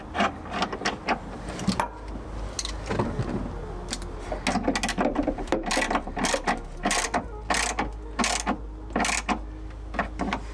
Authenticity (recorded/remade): recorded